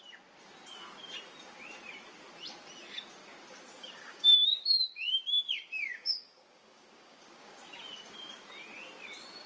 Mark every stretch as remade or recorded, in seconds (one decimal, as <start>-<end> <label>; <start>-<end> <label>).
0.0-3.8 recorded; 3.8-7.6 remade; 7.6-9.5 recorded